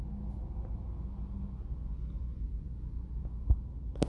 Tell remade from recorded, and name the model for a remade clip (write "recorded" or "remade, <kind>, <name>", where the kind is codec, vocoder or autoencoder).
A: recorded